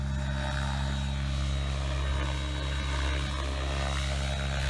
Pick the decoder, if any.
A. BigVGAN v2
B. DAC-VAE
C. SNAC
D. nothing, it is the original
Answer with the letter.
D